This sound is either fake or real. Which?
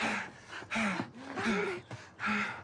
real